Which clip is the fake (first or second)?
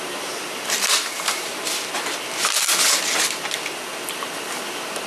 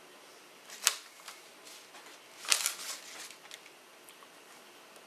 first